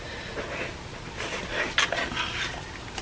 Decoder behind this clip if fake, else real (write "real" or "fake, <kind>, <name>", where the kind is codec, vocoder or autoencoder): real